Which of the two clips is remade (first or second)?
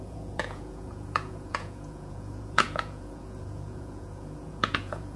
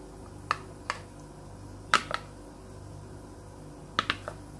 first